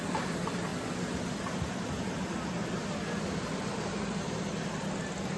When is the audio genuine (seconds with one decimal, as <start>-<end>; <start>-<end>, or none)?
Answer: 0.0-5.4